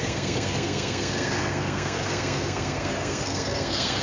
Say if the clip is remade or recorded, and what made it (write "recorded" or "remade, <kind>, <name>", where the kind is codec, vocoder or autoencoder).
remade, codec, SNAC